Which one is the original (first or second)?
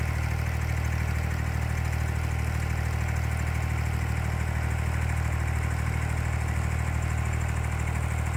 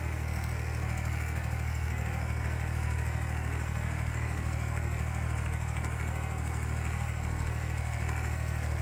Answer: first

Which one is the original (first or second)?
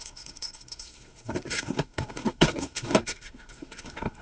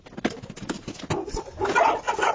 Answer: second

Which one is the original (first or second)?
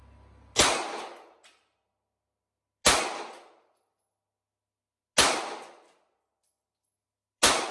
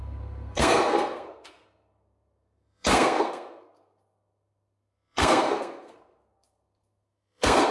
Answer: first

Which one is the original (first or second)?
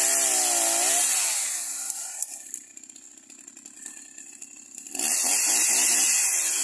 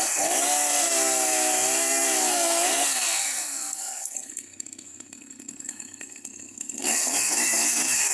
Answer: first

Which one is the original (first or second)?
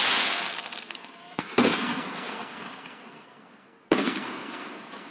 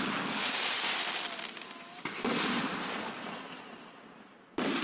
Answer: second